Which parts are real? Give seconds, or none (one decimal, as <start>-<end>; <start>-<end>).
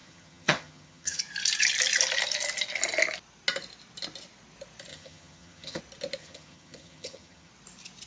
1.2-4.9; 5.8-6.2; 7.5-8.1